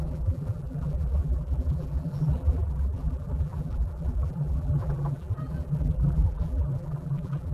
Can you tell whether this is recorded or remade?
remade